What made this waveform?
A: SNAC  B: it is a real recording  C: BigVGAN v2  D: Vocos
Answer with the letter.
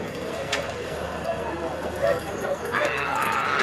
A